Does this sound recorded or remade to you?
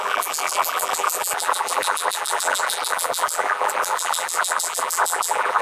remade